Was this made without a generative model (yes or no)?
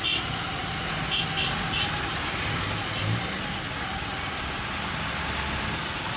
yes